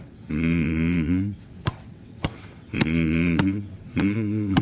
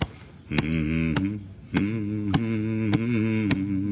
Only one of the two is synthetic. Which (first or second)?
first